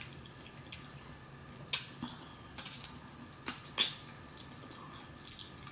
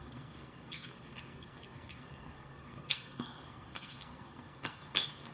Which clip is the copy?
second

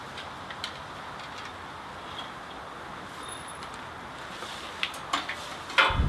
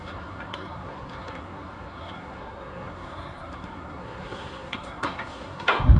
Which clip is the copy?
second